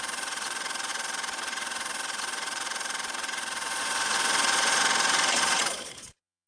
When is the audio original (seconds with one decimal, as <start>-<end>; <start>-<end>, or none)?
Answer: none